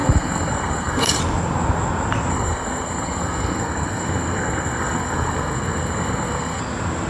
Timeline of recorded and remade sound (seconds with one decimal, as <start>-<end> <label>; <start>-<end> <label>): 0.0-1.2 remade; 1.2-2.3 recorded; 2.3-6.6 remade; 6.6-7.1 recorded